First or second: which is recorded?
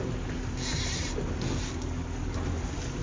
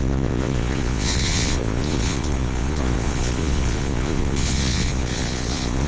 first